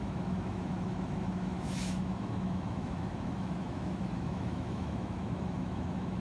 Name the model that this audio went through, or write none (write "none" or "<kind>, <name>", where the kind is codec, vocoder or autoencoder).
autoencoder, DAC-VAE